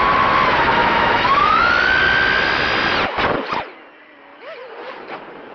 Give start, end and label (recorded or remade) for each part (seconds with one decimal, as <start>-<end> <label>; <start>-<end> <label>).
0.0-0.8 recorded; 0.8-1.7 remade; 1.7-5.5 recorded

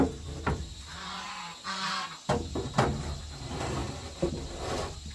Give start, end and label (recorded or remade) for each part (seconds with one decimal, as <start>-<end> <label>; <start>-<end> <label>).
0.0-5.1 recorded

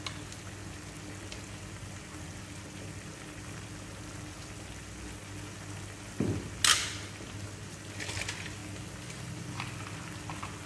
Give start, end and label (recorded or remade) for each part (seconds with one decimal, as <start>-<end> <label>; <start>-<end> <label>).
0.0-10.7 recorded

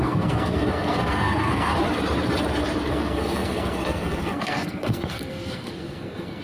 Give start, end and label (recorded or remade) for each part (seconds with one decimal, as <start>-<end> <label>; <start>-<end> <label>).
0.0-1.7 remade; 1.7-2.9 recorded; 2.9-6.4 remade

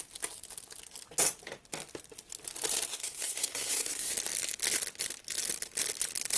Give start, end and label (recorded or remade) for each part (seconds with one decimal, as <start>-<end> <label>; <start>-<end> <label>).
0.0-2.9 recorded; 2.9-4.1 remade; 4.1-6.4 recorded

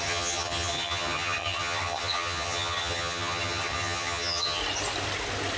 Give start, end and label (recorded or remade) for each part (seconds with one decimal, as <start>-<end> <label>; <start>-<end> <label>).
0.0-4.6 remade; 4.6-5.6 recorded